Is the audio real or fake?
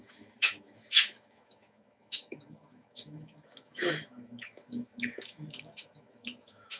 fake